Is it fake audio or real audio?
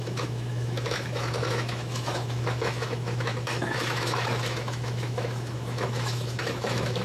fake